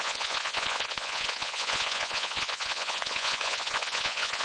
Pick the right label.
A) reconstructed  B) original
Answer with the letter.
A